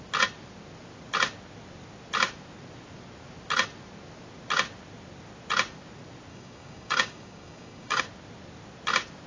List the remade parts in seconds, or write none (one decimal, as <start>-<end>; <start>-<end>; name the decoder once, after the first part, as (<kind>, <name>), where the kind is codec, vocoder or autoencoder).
6.3-8.0 (codec, DAC)